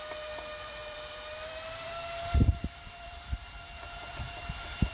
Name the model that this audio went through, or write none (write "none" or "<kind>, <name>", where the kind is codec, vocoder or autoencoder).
vocoder, BigVGAN v2